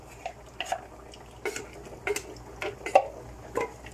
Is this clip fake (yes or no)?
no